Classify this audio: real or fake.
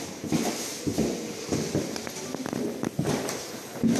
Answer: real